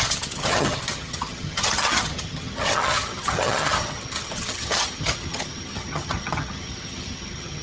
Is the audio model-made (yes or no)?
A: yes